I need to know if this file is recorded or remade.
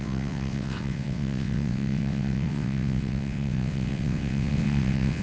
remade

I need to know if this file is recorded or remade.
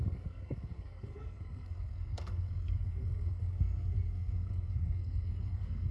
remade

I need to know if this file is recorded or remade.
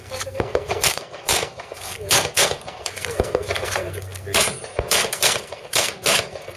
remade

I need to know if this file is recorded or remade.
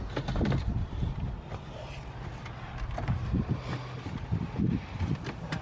recorded